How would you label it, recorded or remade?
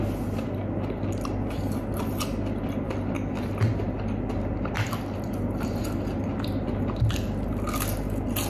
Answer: recorded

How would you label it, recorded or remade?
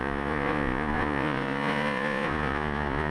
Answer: remade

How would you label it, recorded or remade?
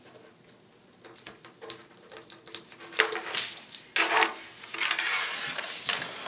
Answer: recorded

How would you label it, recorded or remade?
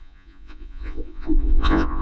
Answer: remade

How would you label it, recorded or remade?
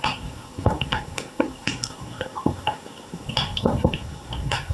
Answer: remade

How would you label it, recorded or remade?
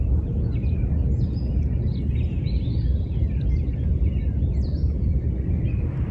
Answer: recorded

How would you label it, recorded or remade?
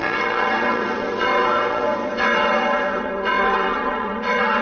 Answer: remade